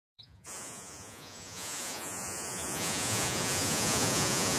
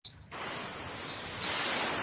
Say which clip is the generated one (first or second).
first